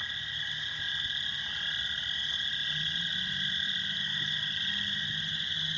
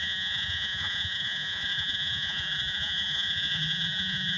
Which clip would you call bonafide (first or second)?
first